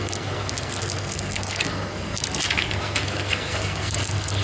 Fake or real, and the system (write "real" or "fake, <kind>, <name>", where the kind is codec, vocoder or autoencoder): fake, codec, SNAC